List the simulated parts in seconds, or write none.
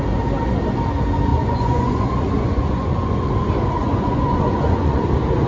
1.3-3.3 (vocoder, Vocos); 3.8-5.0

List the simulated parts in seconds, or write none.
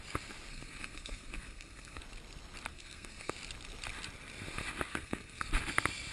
0.5-2.0 (codec, SNAC); 2.7-3.3; 4.9-5.5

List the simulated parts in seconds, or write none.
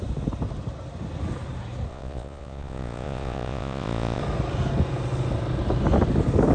1.9-4.2 (vocoder, Vocos)